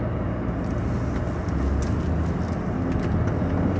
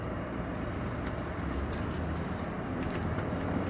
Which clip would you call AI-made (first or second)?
second